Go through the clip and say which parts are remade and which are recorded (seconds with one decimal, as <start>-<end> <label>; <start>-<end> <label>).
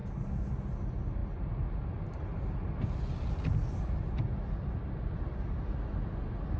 0.0-6.6 recorded